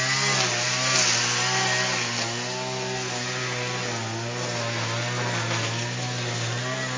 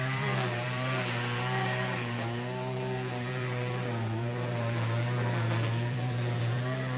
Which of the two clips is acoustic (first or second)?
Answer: first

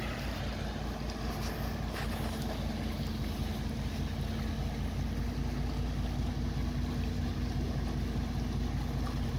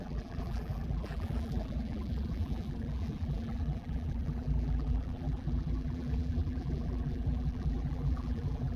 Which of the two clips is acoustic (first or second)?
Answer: first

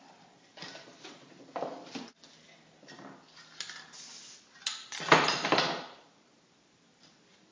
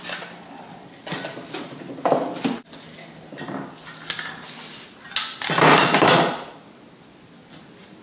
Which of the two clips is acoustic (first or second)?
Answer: second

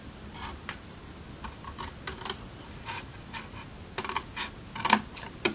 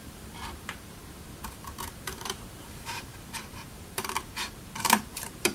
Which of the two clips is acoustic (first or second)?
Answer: first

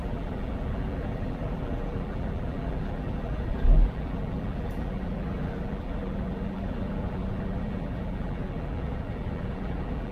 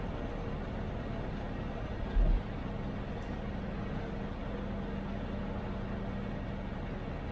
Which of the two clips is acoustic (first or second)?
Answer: second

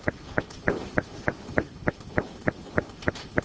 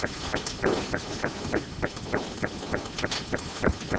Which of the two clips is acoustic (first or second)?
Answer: second